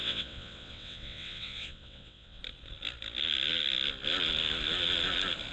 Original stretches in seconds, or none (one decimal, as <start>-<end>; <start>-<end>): 2.4-5.5